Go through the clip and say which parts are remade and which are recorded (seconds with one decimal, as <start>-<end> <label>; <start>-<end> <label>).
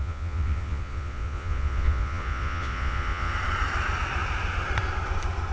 0.0-3.3 remade; 3.3-5.5 recorded